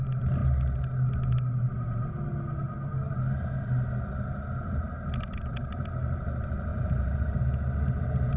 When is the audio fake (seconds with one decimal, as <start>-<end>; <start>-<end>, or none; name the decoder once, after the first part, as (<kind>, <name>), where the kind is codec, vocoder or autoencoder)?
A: 6.7-7.4 (vocoder, BigVGAN v2)